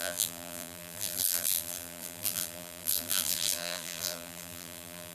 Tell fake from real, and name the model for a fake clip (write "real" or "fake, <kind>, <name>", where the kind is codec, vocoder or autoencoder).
fake, vocoder, BigVGAN v2